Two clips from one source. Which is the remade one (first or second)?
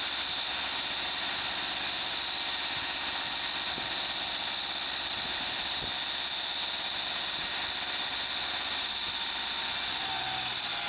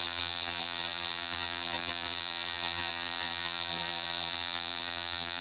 second